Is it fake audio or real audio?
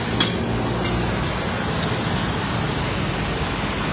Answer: real